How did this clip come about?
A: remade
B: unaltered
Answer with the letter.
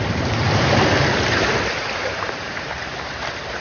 A